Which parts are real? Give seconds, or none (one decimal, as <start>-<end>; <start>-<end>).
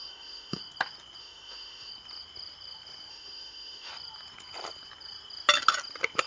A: 0.6-1.2; 1.9-3.1; 3.9-6.3